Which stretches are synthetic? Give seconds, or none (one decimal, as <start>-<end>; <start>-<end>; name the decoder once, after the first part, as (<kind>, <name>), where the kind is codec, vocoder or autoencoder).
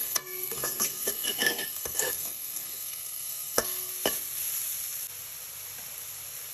0.0-3.9 (codec, SNAC)